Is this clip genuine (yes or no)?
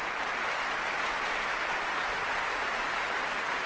yes